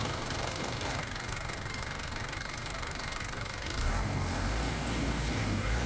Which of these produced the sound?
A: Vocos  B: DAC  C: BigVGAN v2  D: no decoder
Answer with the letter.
B